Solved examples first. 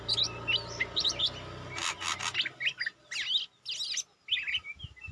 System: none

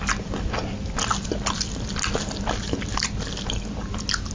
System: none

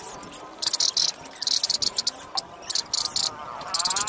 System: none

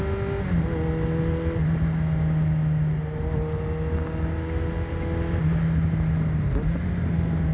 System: none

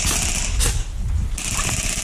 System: vocoder, BigVGAN v2